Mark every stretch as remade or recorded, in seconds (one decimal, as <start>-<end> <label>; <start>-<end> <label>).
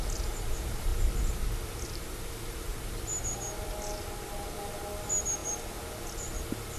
0.0-6.8 recorded